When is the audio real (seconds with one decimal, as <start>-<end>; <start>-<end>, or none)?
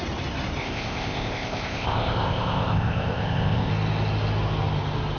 0.0-0.6; 3.7-5.2